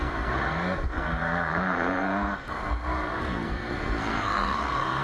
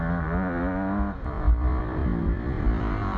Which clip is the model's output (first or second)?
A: first